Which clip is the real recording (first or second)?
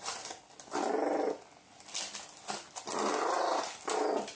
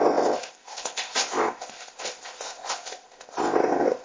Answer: first